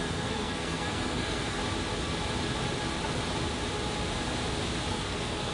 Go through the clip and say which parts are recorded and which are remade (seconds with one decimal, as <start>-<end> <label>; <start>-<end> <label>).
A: 0.0-1.6 remade; 1.6-4.9 recorded; 4.9-5.5 remade